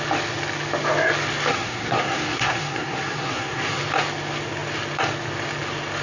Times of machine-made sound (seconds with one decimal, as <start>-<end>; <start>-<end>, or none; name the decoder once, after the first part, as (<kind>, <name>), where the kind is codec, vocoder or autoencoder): 1.5-3.8 (codec, SNAC)